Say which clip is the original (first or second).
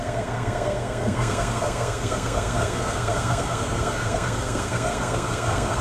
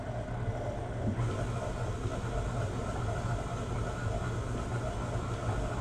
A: second